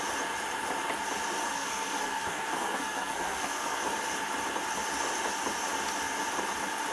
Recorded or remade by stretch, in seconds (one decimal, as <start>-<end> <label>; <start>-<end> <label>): 0.0-1.4 recorded; 1.4-3.8 remade; 3.8-6.9 recorded